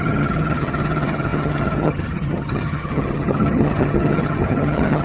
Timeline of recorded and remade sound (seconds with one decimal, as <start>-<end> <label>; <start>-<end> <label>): 0.0-5.0 remade